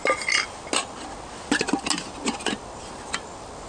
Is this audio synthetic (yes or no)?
no